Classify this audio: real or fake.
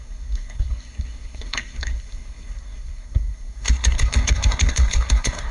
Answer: fake